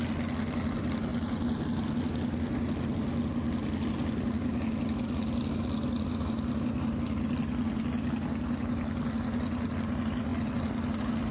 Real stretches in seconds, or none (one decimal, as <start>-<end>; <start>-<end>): 0.0-11.3